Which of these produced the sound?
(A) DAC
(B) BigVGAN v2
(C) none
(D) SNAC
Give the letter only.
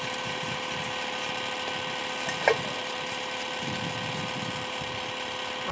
C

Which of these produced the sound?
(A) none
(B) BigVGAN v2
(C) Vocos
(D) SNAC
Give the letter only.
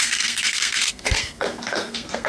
D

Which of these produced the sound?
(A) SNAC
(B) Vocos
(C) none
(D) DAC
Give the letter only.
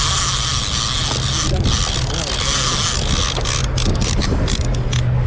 C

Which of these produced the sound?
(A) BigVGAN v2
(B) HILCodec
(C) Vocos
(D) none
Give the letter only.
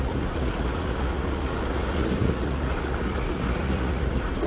C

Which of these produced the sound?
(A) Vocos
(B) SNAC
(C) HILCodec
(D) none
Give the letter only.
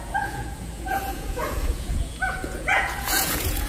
A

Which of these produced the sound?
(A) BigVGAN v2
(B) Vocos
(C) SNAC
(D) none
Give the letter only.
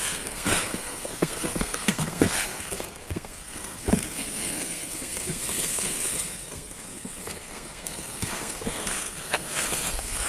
C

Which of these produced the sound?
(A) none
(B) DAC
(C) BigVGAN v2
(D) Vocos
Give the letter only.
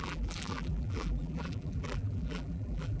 C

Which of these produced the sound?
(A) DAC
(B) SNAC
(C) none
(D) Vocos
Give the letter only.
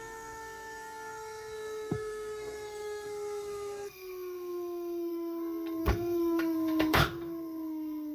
B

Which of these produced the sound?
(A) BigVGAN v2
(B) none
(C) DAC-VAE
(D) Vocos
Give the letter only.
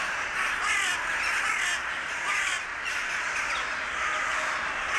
B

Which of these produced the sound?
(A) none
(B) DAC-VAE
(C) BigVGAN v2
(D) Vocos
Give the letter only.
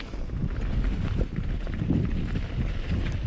A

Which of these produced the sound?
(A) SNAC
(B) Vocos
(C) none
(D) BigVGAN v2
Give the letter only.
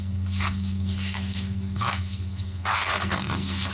A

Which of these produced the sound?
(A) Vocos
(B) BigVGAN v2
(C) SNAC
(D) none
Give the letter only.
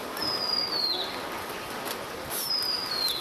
D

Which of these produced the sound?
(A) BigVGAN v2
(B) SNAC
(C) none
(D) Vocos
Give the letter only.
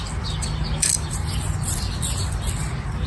C